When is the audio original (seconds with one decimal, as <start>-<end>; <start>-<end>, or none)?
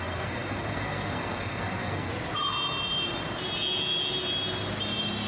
2.1-5.3